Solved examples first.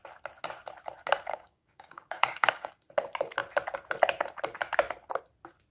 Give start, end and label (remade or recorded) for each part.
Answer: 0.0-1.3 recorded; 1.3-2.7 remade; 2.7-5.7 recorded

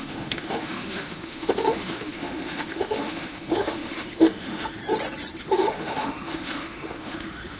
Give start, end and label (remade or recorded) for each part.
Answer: 0.0-4.8 remade; 4.8-5.4 recorded; 5.4-7.6 remade

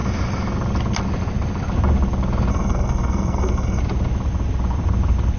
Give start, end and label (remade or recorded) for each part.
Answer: 0.0-2.5 recorded; 2.5-3.8 remade; 3.8-5.4 recorded

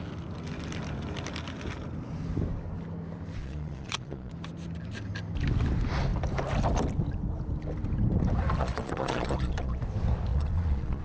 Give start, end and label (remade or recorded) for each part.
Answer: 0.0-3.4 recorded; 3.4-4.3 remade; 4.3-8.6 recorded; 8.6-9.8 remade; 9.8-10.3 recorded; 10.3-11.0 remade

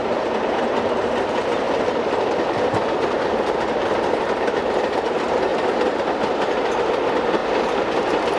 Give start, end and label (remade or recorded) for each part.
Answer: 0.0-5.5 remade; 5.5-6.0 recorded; 6.0-7.4 remade; 7.4-8.4 recorded